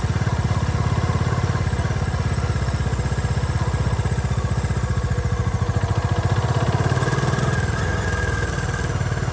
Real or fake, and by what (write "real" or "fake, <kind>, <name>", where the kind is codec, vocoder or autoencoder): real